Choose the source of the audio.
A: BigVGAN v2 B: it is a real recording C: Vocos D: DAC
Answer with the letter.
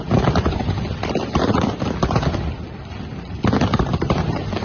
A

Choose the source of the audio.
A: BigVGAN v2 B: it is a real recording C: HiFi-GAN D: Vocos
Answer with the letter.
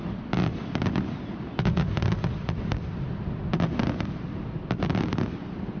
B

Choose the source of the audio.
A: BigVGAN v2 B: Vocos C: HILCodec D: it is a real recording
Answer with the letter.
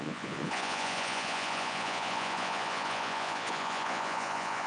B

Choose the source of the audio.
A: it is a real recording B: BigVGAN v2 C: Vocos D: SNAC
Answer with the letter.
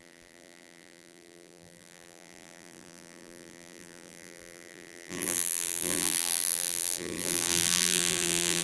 B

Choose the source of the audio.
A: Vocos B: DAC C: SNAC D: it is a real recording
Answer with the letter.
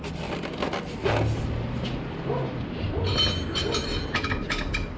D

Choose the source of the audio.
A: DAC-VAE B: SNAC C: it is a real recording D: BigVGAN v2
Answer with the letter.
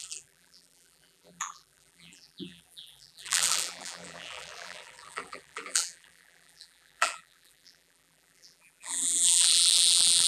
D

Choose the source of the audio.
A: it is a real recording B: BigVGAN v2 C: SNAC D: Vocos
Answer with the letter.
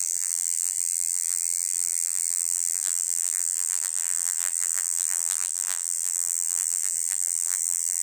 B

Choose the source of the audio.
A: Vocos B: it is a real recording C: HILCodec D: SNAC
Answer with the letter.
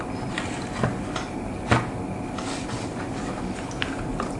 B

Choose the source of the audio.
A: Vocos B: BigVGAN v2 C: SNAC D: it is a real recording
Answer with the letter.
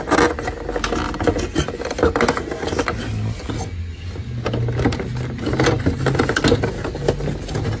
D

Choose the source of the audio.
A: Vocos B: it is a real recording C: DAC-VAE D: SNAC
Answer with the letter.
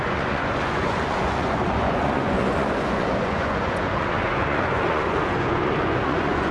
A